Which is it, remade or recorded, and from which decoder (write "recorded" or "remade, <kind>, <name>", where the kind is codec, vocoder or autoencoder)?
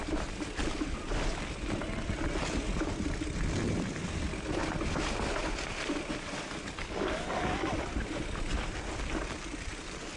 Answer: recorded